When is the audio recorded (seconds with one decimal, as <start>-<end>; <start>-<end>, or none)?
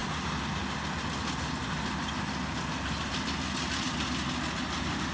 0.0-5.1